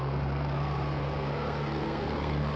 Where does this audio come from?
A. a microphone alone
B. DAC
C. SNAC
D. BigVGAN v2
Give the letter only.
C